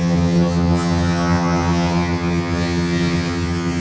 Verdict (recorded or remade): remade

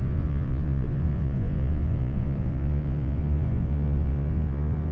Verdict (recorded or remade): remade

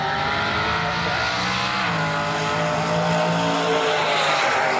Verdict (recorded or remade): recorded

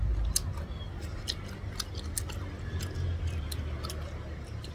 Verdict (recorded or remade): recorded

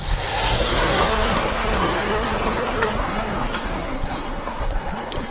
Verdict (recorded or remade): remade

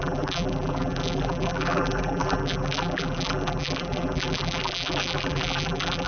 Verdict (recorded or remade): remade